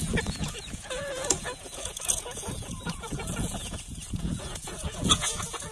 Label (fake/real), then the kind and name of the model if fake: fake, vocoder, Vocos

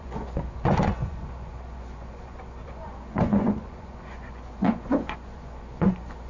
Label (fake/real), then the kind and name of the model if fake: fake, vocoder, Vocos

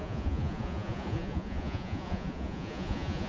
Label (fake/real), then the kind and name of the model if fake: fake, vocoder, Vocos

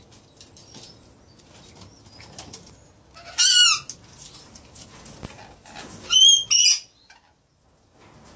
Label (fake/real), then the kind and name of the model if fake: real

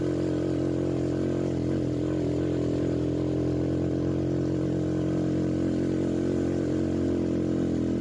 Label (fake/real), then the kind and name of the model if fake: real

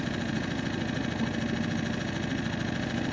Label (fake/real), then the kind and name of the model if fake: real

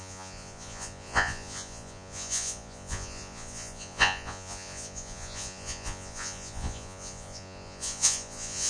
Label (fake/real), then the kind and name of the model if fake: fake, vocoder, Vocos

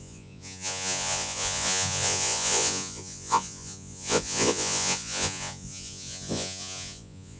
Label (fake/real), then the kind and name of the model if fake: fake, vocoder, Vocos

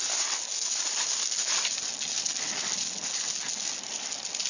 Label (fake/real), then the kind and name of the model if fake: real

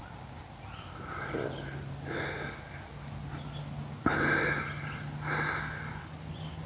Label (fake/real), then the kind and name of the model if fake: real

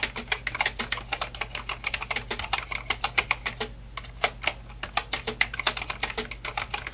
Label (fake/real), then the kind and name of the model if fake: real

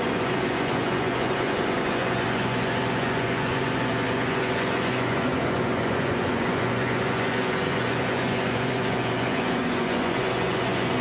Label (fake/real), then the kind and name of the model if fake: fake, vocoder, Vocos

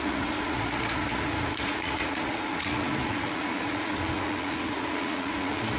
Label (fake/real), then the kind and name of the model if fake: fake, vocoder, Vocos